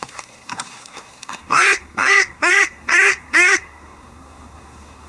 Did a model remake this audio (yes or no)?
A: yes